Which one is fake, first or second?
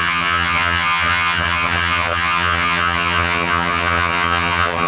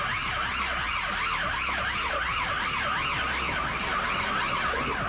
first